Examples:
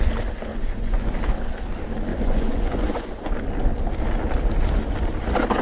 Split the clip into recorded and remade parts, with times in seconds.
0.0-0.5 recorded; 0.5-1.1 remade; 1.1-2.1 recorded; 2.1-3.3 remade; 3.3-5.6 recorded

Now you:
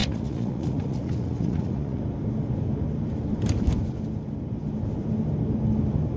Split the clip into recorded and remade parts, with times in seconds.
0.0-2.0 remade; 2.0-6.2 recorded

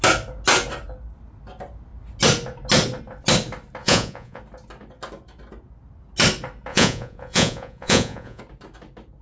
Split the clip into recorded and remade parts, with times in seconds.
0.0-3.8 recorded; 3.8-4.4 remade; 4.4-6.7 recorded; 6.7-8.4 remade; 8.4-9.2 recorded